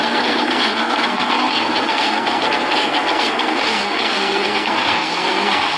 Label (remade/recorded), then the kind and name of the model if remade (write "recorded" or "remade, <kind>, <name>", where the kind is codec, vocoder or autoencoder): remade, codec, SNAC